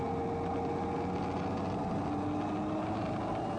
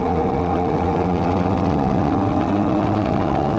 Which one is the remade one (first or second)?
second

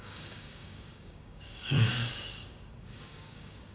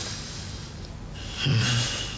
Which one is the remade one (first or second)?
first